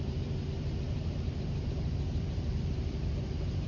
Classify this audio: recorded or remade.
remade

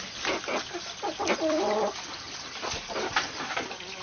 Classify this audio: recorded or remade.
remade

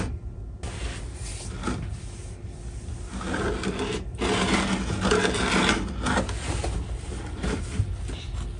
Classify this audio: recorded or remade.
recorded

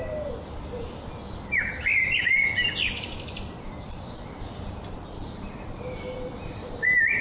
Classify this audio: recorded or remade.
remade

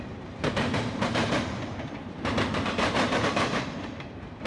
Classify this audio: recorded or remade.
remade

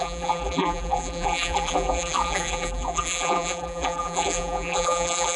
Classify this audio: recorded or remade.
remade